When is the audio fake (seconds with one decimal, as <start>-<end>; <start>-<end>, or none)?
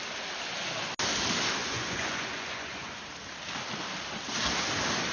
1.6-3.0